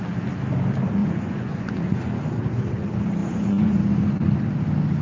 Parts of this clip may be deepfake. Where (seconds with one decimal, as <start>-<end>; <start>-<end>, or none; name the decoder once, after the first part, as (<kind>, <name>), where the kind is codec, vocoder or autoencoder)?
1.0-2.0 (vocoder, Vocos); 3.2-3.8